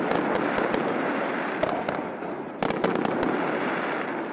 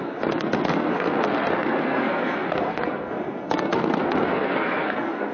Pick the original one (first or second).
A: first